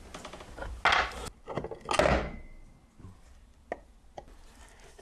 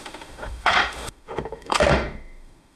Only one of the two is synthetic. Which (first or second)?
second